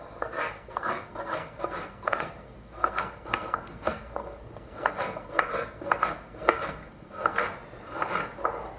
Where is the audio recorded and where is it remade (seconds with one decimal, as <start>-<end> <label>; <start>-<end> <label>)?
0.0-7.4 remade; 7.4-8.8 recorded